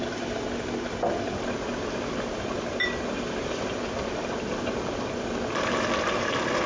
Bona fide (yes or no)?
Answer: yes